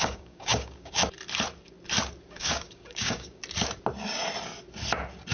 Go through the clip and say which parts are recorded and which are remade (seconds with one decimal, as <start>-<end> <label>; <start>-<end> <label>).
0.0-1.0 remade; 1.0-2.3 recorded; 2.3-3.4 remade; 3.4-5.3 recorded